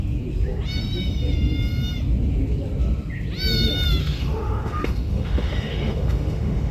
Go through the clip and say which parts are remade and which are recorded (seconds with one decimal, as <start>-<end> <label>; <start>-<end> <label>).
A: 0.0-4.0 recorded; 4.0-6.7 remade